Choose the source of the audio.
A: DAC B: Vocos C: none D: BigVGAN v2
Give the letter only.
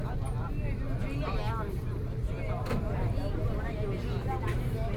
C